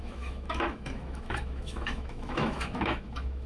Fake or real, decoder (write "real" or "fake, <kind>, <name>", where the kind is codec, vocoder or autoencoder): fake, autoencoder, DAC-VAE